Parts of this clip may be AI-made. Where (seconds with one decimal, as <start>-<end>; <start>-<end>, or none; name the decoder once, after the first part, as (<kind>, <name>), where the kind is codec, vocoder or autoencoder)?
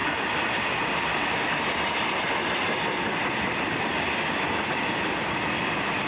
none